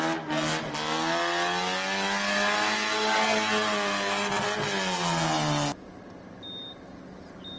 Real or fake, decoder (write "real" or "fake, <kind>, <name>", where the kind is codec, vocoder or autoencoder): real